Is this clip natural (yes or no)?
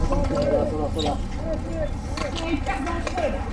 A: yes